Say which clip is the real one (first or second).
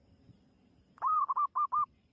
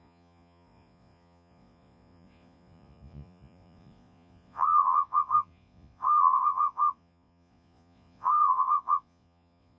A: first